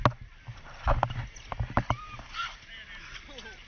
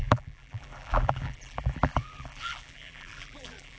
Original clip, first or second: first